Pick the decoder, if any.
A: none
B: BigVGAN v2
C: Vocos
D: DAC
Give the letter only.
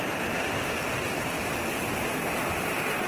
A